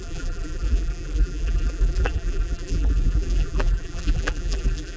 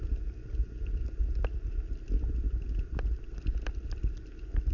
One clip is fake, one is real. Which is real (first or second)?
second